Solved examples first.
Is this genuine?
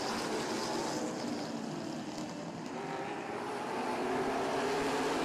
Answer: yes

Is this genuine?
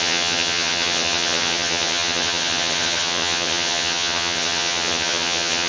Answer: no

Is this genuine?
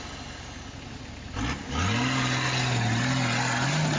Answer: yes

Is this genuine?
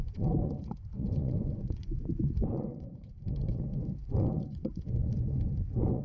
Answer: no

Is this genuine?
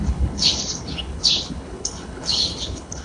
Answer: no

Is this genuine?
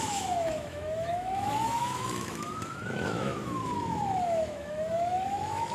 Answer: no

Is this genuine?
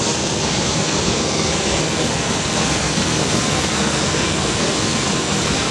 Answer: no